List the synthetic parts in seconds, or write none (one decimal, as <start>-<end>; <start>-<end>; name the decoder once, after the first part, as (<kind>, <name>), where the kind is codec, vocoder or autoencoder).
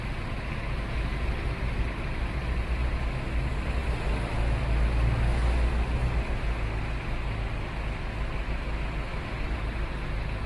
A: 2.8-3.3 (vocoder, BigVGAN v2); 9.1-9.6